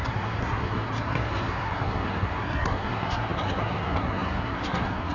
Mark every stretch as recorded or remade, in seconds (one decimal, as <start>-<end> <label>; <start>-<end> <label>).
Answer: 0.0-5.1 remade